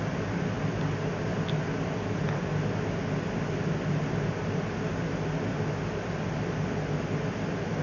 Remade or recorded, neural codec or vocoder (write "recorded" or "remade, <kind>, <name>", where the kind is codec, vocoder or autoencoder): recorded